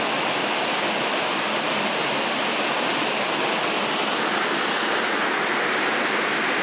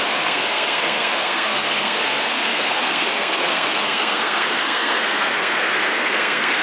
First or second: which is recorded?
first